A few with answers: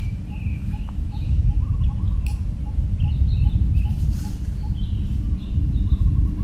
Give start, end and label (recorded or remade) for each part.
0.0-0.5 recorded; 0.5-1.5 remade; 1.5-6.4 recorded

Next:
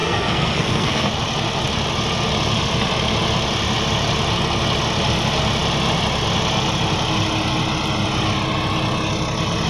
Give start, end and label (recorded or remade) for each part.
0.0-1.1 remade; 1.1-9.7 recorded